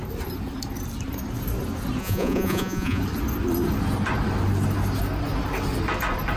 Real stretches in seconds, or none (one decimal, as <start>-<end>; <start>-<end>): 0.0-2.0; 3.0-6.4